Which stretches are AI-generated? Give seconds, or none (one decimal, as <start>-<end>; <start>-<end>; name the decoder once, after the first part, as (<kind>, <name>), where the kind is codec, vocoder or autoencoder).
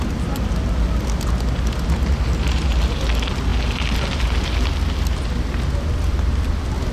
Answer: none